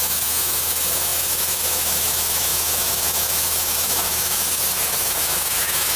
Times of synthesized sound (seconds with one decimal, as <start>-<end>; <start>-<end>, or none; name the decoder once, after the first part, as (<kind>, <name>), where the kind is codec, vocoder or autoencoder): 0.0-6.0 (autoencoder, DAC-VAE)